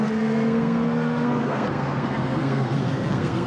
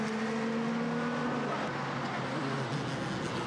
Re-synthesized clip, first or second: first